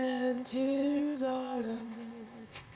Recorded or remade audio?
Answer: remade